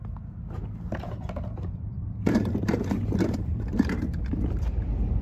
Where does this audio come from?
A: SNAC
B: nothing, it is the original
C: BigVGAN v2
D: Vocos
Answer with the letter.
C